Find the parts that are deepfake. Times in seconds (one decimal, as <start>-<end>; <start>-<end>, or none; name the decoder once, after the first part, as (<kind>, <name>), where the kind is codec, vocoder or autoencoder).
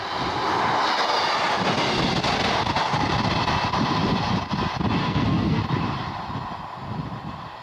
5.0-5.6 (codec, SNAC)